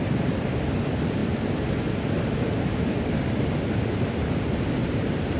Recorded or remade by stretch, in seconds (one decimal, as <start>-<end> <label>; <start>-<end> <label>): 0.0-5.4 recorded